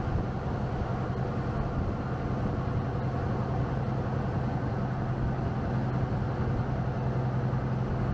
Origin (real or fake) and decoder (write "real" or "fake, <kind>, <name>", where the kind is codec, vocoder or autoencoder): real